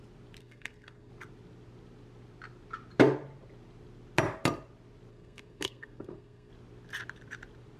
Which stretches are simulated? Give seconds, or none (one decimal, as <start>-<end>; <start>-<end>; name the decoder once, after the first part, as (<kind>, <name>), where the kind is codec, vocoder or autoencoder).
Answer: 0.4-1.1 (codec, SNAC); 5.1-6.5